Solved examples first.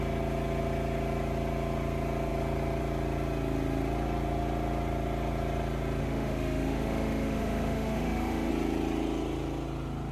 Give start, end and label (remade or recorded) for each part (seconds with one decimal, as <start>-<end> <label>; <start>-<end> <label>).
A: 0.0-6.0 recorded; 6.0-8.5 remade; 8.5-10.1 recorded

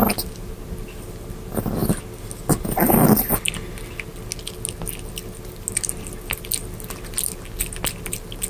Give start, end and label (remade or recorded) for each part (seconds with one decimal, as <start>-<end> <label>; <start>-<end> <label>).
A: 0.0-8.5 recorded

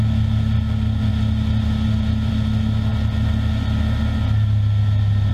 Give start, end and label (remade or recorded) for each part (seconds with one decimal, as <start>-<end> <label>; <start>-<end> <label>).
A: 0.0-5.3 recorded

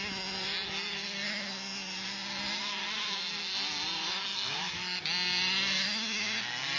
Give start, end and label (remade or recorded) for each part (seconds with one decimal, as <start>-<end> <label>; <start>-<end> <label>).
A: 0.0-4.3 recorded; 4.3-5.0 remade; 5.0-6.8 recorded

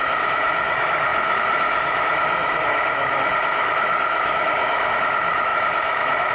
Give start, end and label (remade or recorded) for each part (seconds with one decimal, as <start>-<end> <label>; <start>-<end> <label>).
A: 0.0-6.3 remade